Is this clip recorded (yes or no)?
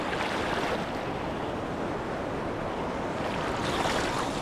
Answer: yes